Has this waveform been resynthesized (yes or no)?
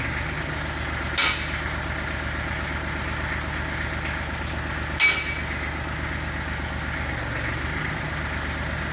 no